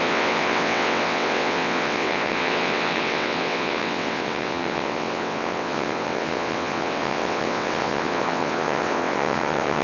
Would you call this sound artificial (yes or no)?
yes